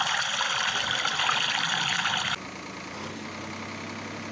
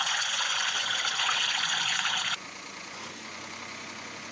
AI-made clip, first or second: second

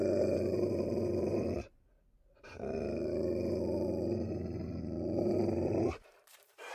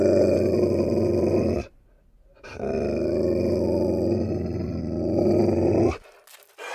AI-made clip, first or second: first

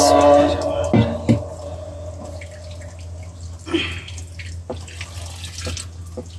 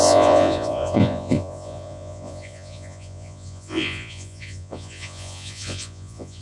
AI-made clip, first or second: second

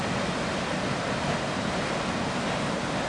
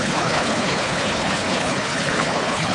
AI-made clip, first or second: second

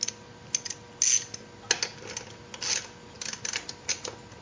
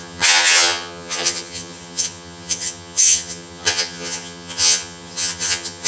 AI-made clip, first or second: second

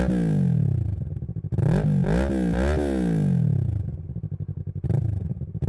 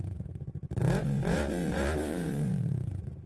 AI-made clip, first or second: second